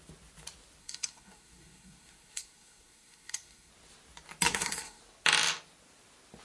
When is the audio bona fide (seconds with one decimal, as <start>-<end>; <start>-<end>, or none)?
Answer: 0.0-0.8; 3.7-4.5; 5.0-6.4